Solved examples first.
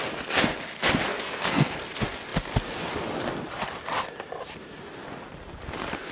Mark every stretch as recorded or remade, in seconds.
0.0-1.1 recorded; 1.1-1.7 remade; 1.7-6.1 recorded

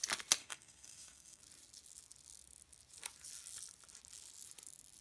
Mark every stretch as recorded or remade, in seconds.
0.0-0.4 recorded; 0.4-1.4 remade; 1.4-5.0 recorded

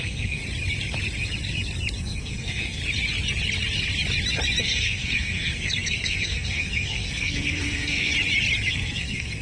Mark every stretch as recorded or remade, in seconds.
0.0-0.4 remade; 0.4-2.0 recorded; 2.0-2.8 remade; 2.8-4.6 recorded; 4.6-8.1 remade; 8.1-8.7 recorded; 8.7-9.4 remade